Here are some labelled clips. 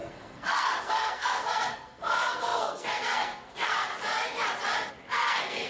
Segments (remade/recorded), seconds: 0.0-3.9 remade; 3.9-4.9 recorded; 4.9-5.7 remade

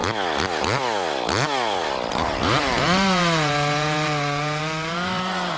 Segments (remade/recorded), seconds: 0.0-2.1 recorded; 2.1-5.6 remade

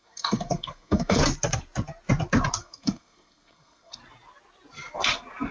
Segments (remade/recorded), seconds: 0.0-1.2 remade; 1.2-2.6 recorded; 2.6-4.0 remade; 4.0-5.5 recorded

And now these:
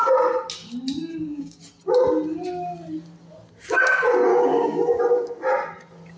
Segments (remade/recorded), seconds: 0.0-1.0 recorded; 1.0-1.6 remade; 1.6-4.3 recorded; 4.3-5.0 remade; 5.0-6.2 recorded

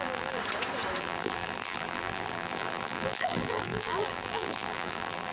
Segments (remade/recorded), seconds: 0.0-0.4 remade; 0.4-1.0 recorded; 1.0-5.3 remade